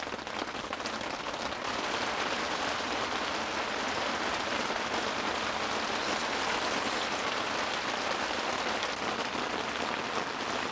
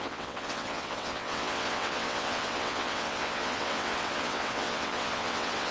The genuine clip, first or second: first